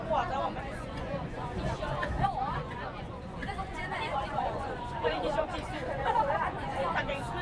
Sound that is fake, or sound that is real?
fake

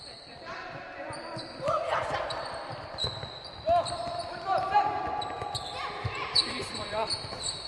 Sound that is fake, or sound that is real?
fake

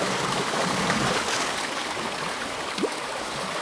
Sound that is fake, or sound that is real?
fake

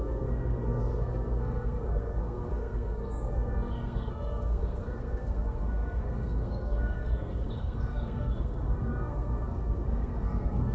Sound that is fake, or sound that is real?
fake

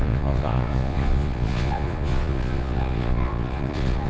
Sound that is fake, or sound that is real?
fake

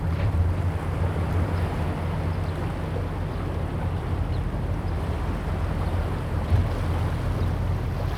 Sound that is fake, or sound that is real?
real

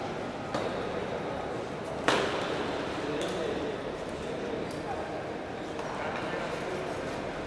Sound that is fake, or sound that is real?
real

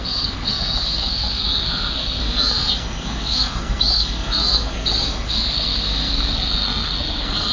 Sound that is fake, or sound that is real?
fake